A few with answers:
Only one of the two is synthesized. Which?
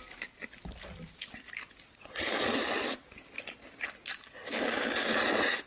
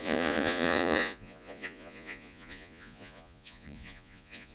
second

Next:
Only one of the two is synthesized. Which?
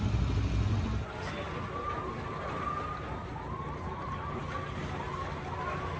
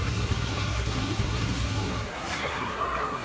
second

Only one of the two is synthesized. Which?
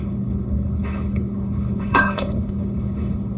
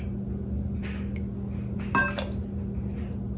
first